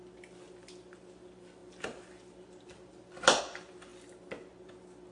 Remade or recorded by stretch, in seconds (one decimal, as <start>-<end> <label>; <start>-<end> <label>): 0.0-5.1 recorded